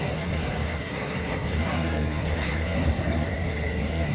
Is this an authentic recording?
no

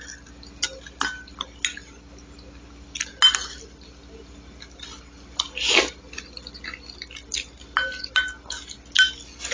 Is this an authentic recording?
yes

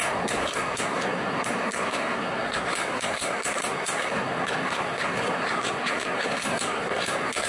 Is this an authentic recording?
no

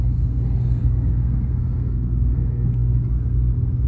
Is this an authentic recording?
no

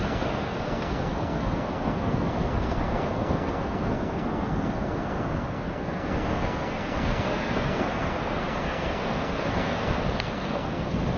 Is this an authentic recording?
no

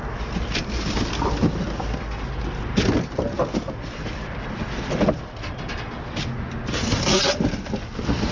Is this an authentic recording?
yes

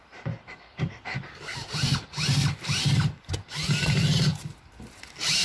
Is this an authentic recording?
yes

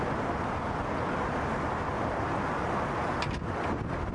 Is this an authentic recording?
yes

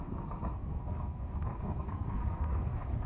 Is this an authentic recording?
no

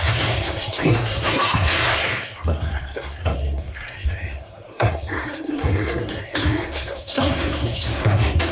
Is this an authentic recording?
no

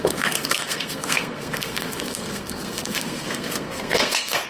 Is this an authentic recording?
no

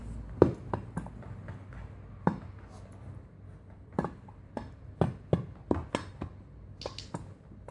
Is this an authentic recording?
yes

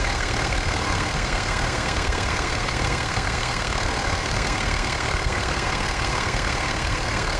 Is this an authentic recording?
no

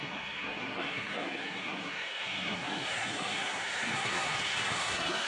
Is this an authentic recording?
no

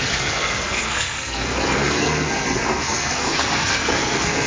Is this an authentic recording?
no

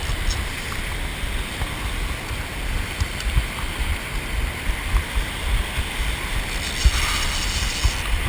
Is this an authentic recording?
yes